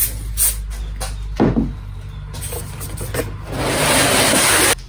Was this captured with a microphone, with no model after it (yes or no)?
yes